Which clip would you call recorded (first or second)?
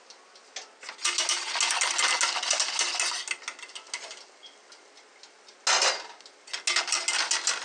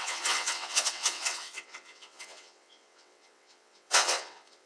first